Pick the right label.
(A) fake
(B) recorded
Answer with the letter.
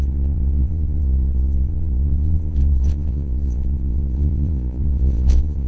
A